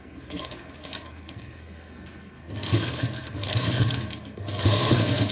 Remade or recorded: remade